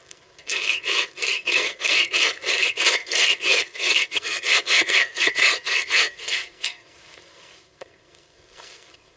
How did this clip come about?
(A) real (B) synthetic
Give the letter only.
B